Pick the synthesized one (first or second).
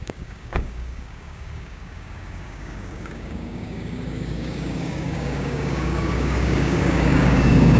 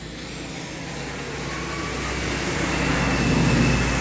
first